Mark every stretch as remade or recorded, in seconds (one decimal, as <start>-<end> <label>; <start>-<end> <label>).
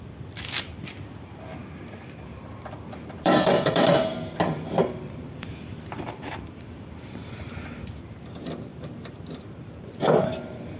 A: 0.0-10.8 remade